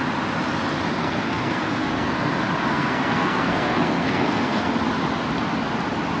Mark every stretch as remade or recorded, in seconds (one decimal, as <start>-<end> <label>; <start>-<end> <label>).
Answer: 0.0-1.0 recorded; 1.0-2.3 remade; 2.3-2.7 recorded; 2.7-4.7 remade; 4.7-6.2 recorded